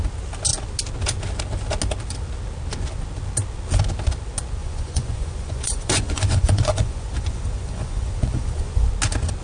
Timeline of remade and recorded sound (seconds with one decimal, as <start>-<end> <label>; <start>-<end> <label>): 0.0-4.6 recorded; 4.6-8.9 remade; 8.9-9.4 recorded